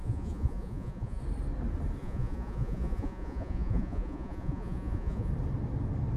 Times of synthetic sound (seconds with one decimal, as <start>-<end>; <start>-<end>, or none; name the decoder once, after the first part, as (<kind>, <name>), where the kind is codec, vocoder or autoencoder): 0.0-1.2 (vocoder, Vocos); 2.0-5.3